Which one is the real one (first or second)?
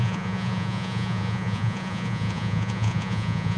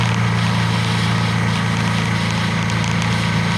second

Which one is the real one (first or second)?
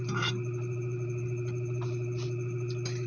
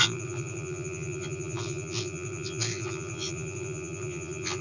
first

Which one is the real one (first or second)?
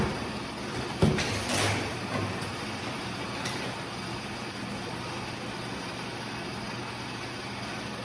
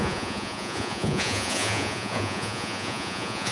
first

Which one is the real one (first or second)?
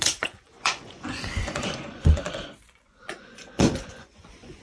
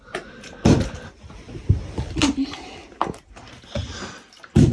second